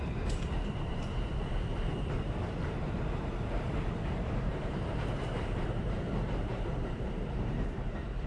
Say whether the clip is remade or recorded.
remade